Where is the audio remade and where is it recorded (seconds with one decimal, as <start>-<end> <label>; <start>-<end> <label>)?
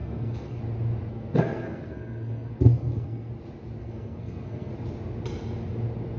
0.0-0.6 remade; 0.6-1.1 recorded; 1.1-3.3 remade; 3.3-3.8 recorded; 3.8-4.7 remade; 4.7-6.2 recorded